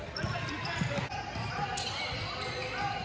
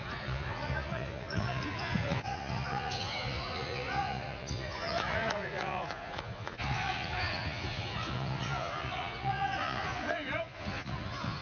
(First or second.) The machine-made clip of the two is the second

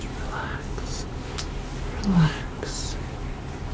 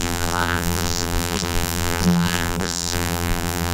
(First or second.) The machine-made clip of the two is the second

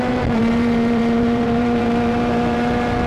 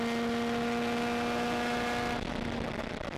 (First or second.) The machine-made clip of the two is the first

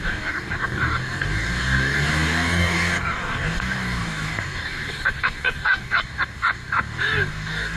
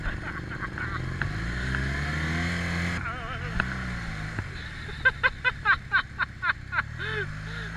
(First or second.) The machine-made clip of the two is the first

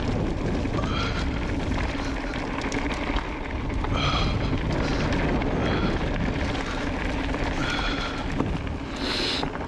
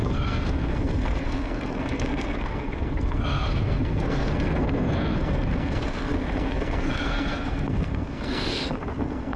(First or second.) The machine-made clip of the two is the second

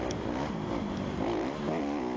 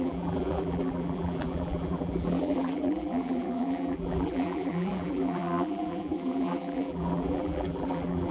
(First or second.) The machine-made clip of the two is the second